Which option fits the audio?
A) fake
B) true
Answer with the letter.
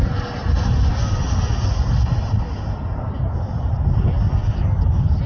B